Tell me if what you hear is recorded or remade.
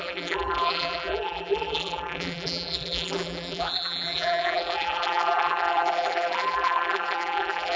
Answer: remade